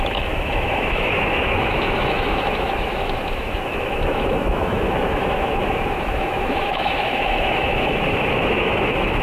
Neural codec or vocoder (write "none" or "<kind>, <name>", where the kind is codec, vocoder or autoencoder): autoencoder, DAC-VAE